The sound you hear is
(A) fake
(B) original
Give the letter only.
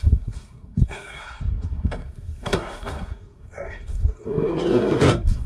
A